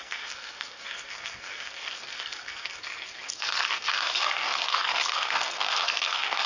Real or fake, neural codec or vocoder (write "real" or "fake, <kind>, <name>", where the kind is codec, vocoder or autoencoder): fake, codec, SNAC